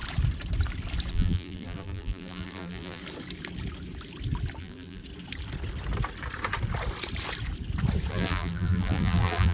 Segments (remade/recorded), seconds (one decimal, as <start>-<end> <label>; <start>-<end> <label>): 0.0-1.1 recorded; 1.1-3.0 remade; 3.0-4.6 recorded; 4.6-5.0 remade; 5.0-8.1 recorded; 8.1-9.5 remade